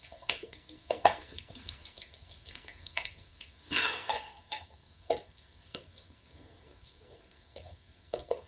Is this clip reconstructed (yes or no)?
yes